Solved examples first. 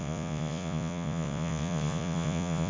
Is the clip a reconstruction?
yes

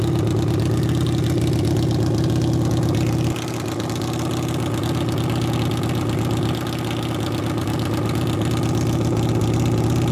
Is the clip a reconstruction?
no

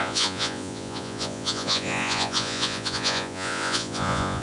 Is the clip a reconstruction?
yes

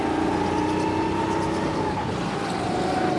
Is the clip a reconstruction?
no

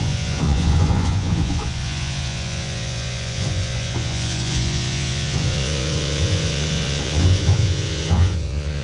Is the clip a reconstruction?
yes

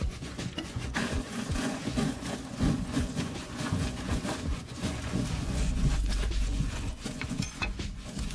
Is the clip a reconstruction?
yes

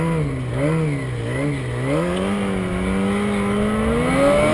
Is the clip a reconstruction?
no